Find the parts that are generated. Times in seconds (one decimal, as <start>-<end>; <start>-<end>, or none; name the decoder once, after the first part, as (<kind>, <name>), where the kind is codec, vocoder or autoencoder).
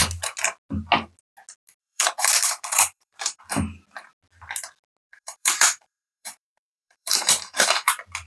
1.8-3.4 (vocoder, BigVGAN v2); 5.1-7.9